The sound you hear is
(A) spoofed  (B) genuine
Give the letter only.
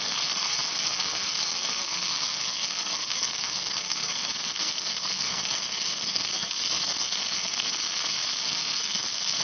A